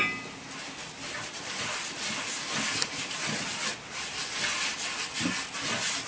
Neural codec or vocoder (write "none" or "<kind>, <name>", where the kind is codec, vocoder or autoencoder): none